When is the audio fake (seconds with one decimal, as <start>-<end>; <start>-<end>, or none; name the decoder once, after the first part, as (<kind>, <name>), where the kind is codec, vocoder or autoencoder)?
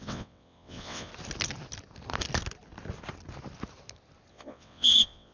0.0-1.1 (vocoder, WaveNeXt); 4.3-5.3